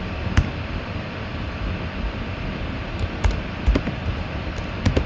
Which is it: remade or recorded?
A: recorded